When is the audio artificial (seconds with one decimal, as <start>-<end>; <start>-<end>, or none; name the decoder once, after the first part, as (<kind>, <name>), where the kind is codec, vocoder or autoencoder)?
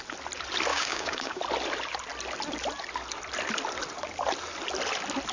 0.7-1.4 (codec, DAC)